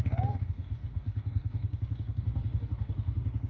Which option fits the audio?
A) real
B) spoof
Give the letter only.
B